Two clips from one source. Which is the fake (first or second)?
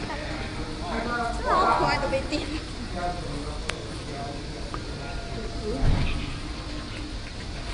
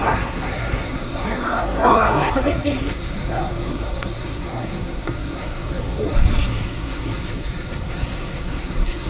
second